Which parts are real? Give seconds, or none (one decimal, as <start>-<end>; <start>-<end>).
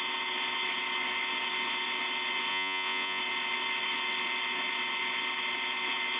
0.0-2.5; 3.2-6.2